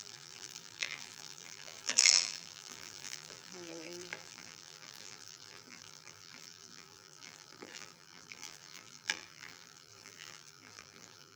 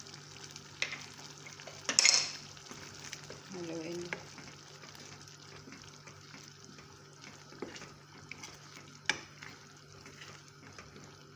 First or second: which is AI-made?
first